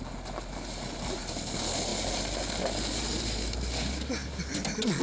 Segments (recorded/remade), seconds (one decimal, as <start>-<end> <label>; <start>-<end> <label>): 0.0-5.0 recorded